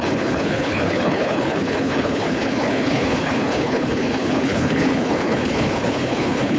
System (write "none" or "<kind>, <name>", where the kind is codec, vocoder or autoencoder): codec, HILCodec